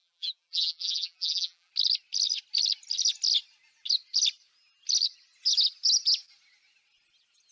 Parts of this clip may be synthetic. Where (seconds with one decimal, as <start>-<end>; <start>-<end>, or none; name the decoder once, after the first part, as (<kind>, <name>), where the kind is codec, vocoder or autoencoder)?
0.0-1.7 (vocoder, BigVGAN v2)